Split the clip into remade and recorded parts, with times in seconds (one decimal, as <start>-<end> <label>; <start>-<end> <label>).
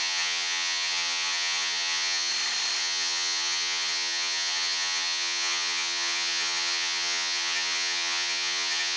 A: 0.0-2.3 remade; 2.3-2.8 recorded; 2.8-9.0 remade